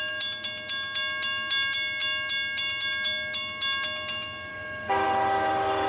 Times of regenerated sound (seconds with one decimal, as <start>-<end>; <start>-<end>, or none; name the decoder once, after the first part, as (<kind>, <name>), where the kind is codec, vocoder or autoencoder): 4.5-5.9 (codec, DAC)